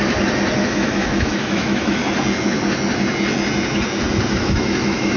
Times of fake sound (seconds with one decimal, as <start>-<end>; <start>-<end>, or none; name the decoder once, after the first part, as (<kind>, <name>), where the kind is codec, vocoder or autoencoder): 0.6-2.0 (autoencoder, DAC-VAE); 4.3-5.2